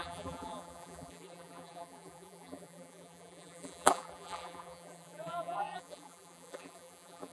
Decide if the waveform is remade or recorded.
remade